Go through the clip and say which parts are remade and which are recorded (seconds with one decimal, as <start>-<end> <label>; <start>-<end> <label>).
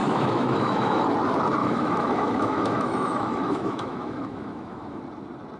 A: 0.0-1.0 remade; 1.0-1.6 recorded; 1.6-5.0 remade; 5.0-5.6 recorded